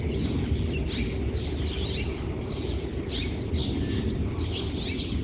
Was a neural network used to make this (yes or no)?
no